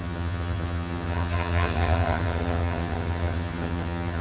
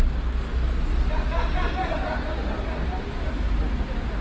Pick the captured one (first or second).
second